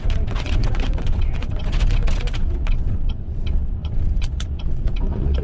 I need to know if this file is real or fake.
fake